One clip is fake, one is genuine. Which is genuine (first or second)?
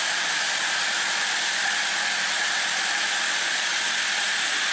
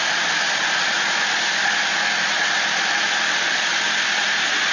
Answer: second